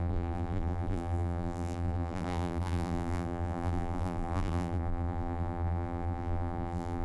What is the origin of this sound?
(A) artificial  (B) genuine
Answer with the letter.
A